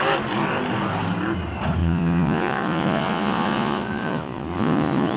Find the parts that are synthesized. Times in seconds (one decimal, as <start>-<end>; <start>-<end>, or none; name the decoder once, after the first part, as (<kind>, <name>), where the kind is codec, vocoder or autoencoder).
1.8-5.2 (vocoder, Vocos)